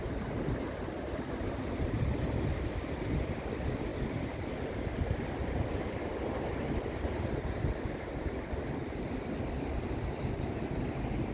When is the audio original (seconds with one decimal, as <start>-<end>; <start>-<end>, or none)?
0.0-11.3